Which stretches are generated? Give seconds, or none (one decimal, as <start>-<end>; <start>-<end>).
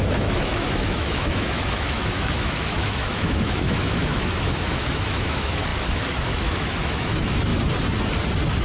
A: 0.0-7.5